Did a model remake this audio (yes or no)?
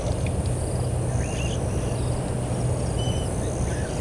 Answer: no